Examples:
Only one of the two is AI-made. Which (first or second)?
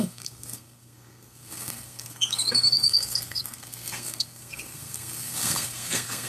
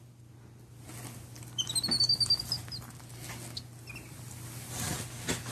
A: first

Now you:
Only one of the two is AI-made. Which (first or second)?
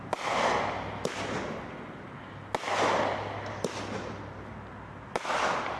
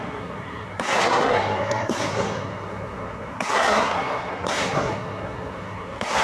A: second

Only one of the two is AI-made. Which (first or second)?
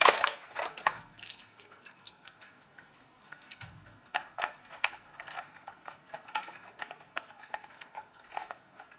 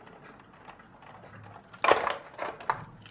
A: first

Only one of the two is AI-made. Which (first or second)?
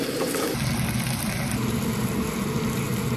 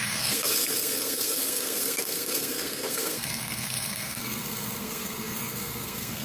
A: second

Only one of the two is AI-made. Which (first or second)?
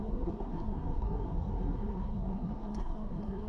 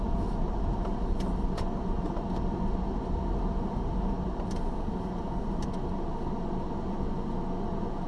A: first